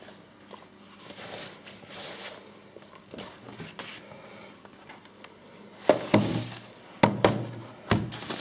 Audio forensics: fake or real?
real